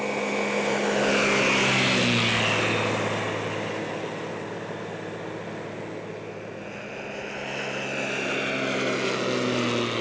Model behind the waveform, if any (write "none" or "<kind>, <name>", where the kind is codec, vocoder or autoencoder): none